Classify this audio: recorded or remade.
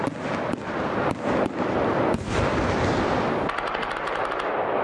recorded